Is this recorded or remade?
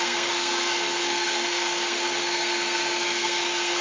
remade